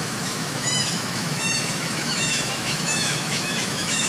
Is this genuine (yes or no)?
no